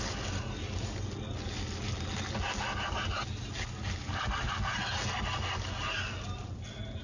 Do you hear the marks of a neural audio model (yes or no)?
no